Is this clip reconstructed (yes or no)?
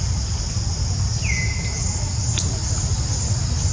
no